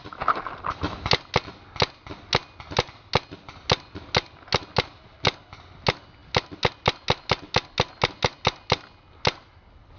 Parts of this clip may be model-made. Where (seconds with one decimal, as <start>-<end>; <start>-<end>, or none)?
none